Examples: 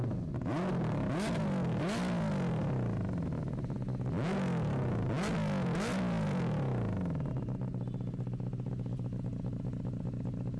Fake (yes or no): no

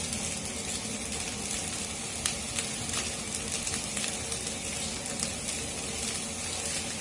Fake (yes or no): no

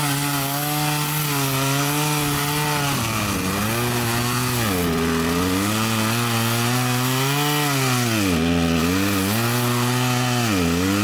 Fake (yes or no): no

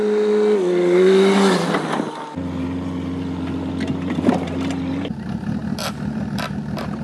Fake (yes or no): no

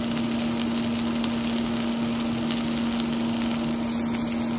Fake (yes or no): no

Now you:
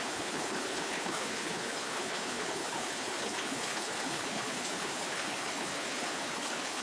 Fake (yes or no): yes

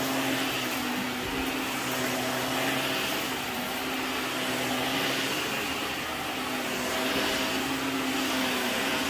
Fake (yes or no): no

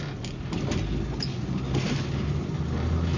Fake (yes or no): no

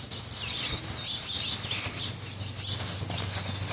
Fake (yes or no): no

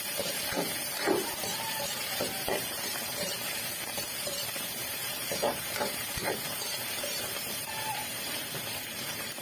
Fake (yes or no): yes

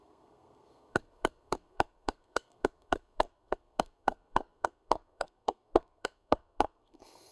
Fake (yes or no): yes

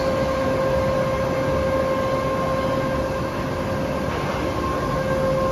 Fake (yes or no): no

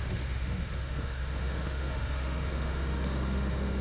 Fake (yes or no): yes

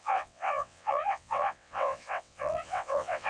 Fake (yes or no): yes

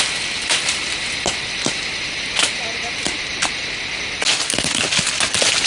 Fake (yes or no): no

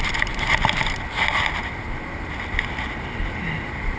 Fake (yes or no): no